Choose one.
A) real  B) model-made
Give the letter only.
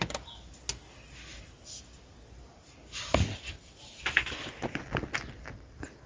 A